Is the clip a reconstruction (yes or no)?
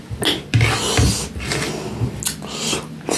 no